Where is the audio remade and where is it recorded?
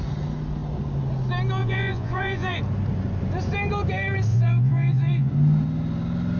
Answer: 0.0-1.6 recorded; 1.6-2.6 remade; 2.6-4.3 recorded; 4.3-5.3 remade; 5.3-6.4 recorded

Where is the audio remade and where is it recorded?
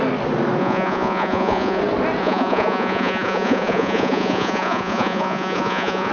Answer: 0.0-0.6 recorded; 0.6-1.8 remade; 1.8-2.2 recorded; 2.2-6.1 remade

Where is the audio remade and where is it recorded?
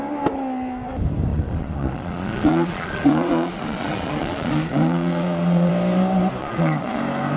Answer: 0.0-1.3 recorded; 1.3-5.7 remade; 5.7-6.4 recorded; 6.4-7.0 remade; 7.0-7.4 recorded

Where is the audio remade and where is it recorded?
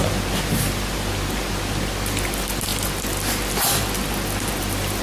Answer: 0.0-5.0 recorded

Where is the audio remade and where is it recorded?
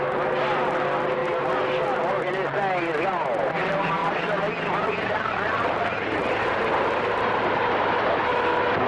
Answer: 0.0-8.9 recorded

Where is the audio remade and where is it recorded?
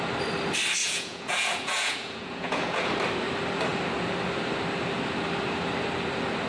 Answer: 0.0-0.8 recorded; 0.8-2.9 remade; 2.9-6.5 recorded